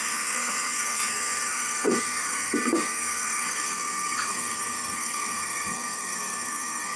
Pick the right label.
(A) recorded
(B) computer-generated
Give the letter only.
B